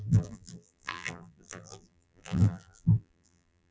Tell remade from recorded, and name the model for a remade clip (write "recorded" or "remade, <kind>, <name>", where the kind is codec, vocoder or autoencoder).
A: remade, vocoder, BigVGAN v2